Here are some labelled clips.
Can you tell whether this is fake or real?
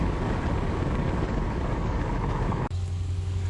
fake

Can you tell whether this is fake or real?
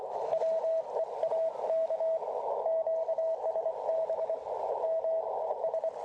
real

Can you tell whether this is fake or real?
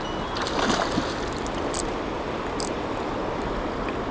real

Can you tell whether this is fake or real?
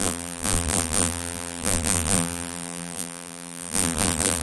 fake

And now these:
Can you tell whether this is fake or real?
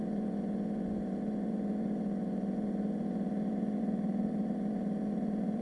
fake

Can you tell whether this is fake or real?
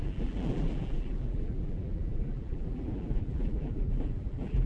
fake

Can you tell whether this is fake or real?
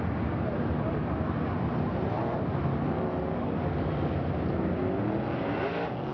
real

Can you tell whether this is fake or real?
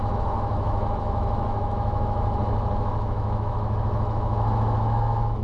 fake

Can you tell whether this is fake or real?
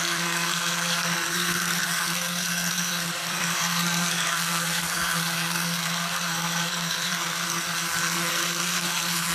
fake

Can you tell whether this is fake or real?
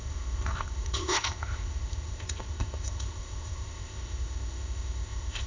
fake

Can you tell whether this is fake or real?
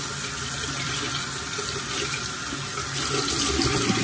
real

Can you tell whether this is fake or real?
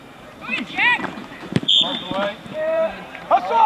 fake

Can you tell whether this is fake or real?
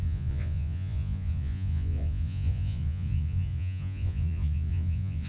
fake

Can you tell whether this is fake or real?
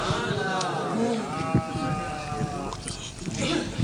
real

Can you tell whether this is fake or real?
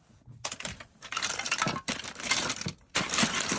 real